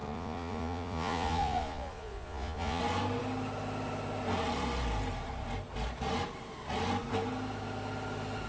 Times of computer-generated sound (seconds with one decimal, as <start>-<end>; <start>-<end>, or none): 0.0-2.8